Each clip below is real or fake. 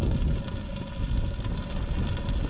real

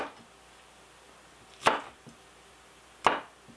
real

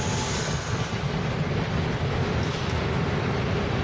real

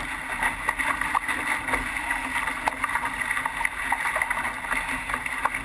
real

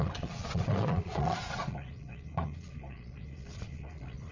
fake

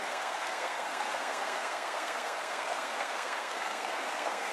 fake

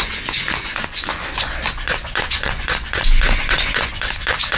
fake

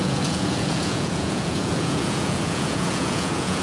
fake